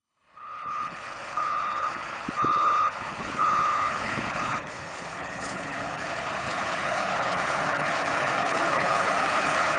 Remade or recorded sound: remade